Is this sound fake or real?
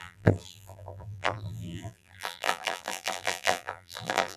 fake